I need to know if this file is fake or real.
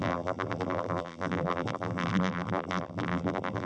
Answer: fake